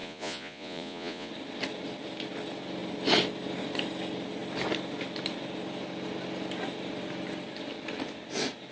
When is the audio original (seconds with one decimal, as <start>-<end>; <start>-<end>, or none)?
1.3-8.7